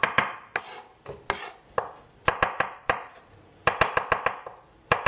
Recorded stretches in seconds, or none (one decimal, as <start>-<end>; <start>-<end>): 0.0-5.1